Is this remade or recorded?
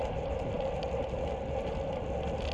recorded